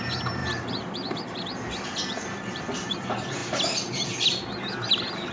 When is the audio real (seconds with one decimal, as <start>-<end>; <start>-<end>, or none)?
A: 0.0-5.3